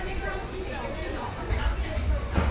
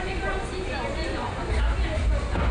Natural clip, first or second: second